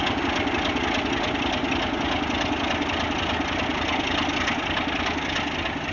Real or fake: real